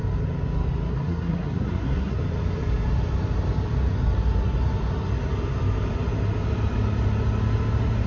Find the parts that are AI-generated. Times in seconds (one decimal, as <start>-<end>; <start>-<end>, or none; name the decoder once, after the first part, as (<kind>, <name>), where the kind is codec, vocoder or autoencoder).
0.9-2.2 (codec, SNAC)